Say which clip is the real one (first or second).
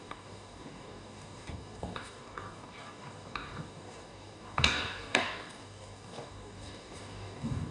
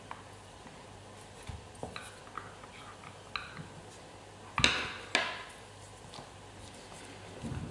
second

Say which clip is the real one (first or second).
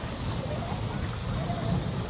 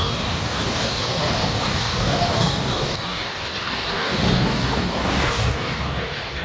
first